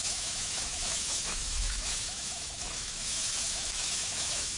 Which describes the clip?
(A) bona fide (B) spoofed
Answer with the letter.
B